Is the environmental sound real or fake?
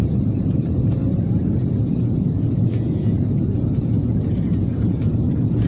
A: fake